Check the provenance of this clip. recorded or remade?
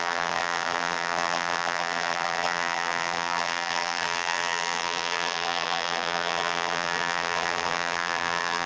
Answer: remade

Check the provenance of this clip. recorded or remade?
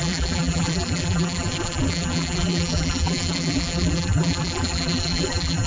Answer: remade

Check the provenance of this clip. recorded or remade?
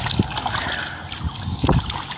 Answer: recorded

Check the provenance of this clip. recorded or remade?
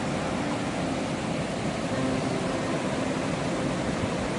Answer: recorded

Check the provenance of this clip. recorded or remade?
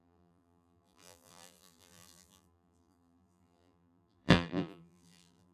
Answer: remade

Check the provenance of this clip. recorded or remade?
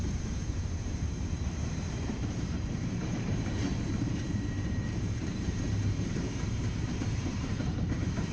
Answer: remade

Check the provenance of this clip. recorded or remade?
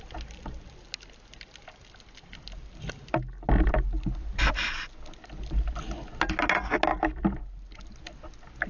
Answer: recorded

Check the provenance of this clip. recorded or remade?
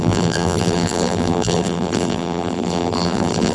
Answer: remade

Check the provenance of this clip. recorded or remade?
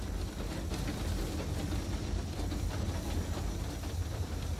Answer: recorded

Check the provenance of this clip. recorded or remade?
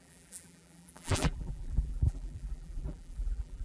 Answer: remade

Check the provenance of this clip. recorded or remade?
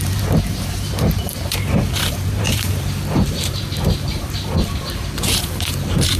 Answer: remade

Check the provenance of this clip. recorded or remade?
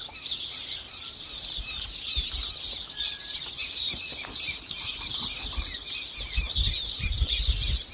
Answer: remade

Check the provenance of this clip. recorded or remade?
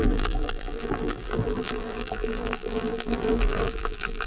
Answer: remade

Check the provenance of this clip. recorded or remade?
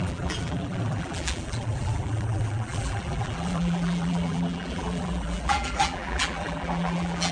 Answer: remade